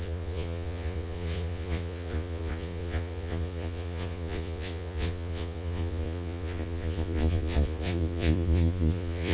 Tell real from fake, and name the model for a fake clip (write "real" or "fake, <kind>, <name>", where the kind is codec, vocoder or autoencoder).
fake, vocoder, Vocos